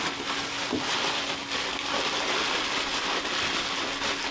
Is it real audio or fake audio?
real